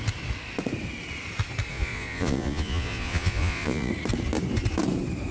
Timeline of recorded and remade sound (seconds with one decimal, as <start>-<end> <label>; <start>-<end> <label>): 0.0-1.7 recorded; 1.7-3.9 remade; 3.9-5.3 recorded